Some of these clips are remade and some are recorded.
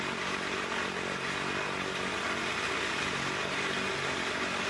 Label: recorded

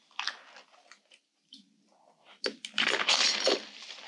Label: recorded